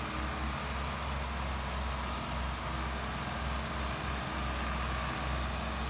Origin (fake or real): real